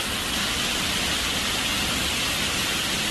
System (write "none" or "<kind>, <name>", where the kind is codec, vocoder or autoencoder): none